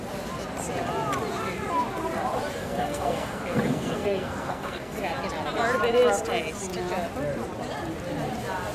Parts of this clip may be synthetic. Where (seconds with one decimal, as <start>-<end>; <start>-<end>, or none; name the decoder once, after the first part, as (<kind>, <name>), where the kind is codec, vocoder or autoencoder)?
2.6-5.0 (codec, SNAC)